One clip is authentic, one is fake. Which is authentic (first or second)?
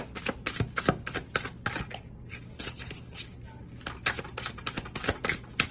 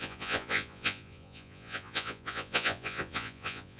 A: first